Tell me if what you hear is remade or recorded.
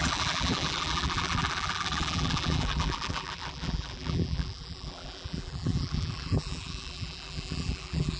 remade